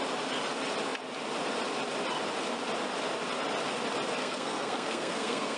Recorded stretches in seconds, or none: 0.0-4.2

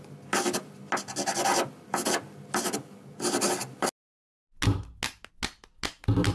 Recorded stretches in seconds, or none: 0.0-6.3

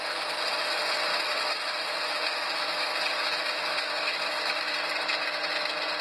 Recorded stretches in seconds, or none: 0.0-1.1; 4.7-6.0

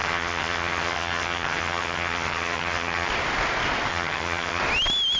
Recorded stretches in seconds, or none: 3.1-3.9; 4.6-5.2

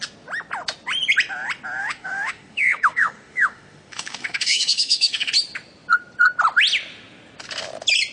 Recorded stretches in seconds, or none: 0.0-1.8; 5.3-8.1

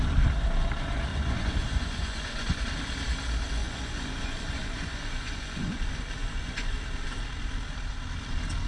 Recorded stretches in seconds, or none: 0.0-1.1; 2.6-3.6; 5.8-6.2; 6.8-8.7

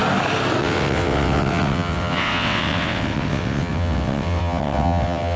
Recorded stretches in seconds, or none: 0.0-0.6